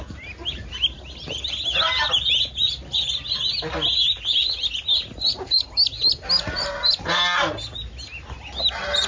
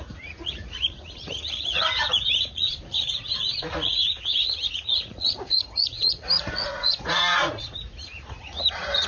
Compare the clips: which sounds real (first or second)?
first